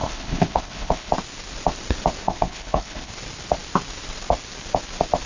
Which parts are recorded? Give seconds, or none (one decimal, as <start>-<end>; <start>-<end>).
1.1-2.2; 3.1-5.3